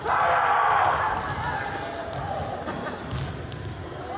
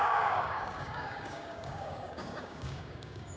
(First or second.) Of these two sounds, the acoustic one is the first